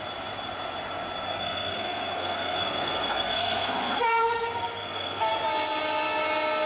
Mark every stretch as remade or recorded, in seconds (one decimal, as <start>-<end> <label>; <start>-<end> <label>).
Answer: 0.0-1.3 recorded; 1.3-5.3 remade; 5.3-6.7 recorded